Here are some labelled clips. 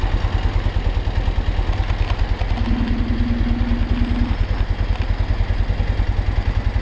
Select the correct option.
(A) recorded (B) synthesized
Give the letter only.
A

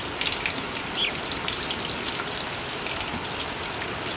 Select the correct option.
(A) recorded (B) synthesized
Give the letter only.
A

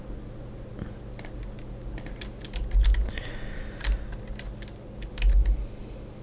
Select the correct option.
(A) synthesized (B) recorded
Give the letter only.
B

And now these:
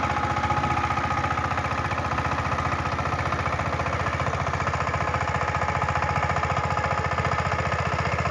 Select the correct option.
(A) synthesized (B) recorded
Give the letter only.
B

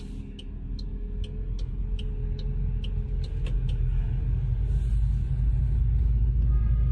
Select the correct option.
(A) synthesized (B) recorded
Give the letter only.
B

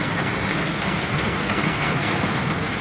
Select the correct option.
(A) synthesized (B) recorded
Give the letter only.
A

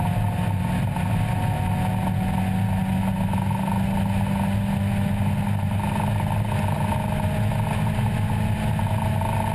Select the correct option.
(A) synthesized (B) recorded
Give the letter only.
B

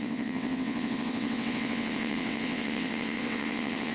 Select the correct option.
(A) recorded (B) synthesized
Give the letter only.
B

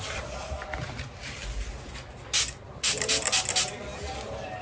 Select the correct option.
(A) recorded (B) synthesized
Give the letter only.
A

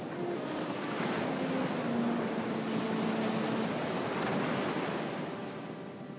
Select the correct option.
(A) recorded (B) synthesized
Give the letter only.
A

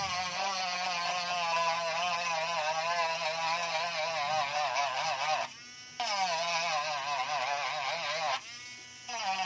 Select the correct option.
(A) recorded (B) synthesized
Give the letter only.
A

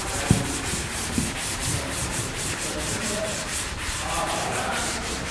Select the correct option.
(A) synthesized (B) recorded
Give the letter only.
A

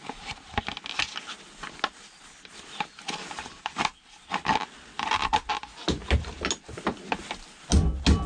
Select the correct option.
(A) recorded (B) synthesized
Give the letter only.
A